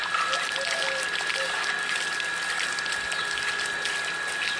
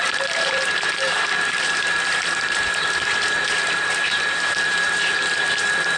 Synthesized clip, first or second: second